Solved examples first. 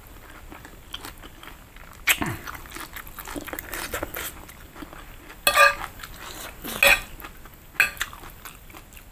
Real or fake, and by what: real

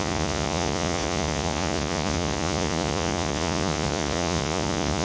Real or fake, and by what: fake, vocoder, Vocos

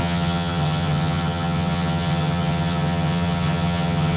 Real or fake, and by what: fake, vocoder, HiFi-GAN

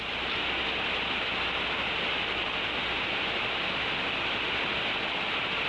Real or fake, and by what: real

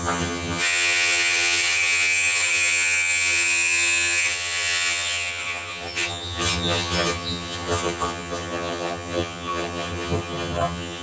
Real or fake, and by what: fake, vocoder, HiFi-GAN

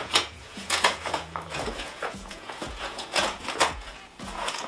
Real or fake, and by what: fake, vocoder, Vocos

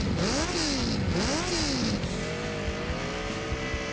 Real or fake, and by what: real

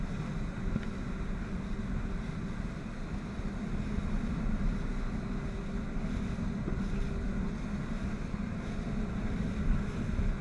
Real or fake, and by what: real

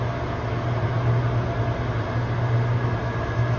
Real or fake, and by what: real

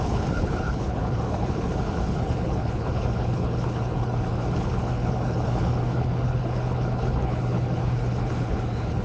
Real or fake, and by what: fake, codec, HILCodec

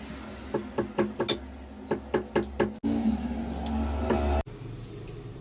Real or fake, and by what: real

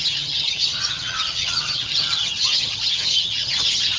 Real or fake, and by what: fake, vocoder, HiFi-GAN